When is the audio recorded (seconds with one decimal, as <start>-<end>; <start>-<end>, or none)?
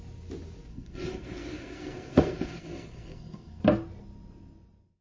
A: 0.0-0.7; 3.6-5.0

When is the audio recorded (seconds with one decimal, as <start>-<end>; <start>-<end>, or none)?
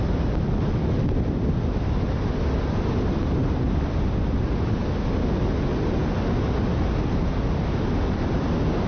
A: 0.0-8.9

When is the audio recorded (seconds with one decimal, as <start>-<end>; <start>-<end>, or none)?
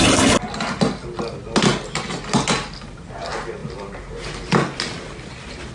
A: 0.0-3.6; 4.6-5.7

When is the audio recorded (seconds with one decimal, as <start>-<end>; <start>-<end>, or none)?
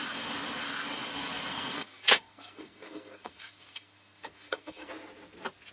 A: 0.0-1.5; 4.9-5.7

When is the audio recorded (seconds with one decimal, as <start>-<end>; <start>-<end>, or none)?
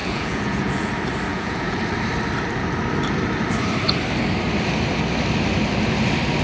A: 0.9-1.3; 1.8-6.4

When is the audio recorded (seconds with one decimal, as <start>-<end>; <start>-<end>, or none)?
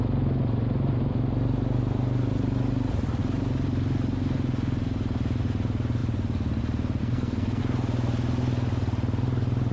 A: 0.0-7.0; 7.6-9.7